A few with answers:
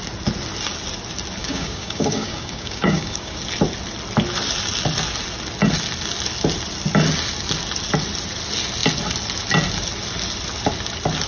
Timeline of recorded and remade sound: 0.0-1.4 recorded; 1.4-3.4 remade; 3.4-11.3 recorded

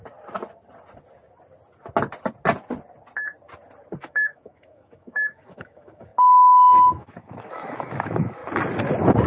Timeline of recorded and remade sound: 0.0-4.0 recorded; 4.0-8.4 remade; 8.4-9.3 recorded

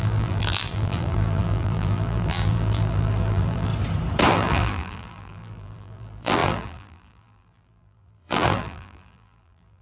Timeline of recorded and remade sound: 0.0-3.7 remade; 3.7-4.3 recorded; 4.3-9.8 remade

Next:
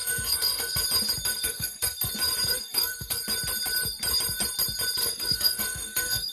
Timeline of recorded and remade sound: 0.0-0.8 remade; 0.8-1.3 recorded; 1.3-2.1 remade; 2.1-2.5 recorded; 2.5-3.2 remade; 3.2-5.0 recorded; 5.0-6.3 remade